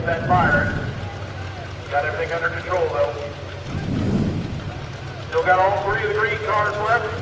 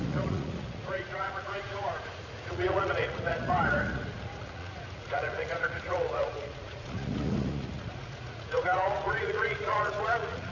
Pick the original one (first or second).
first